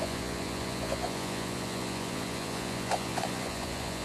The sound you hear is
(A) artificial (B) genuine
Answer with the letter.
A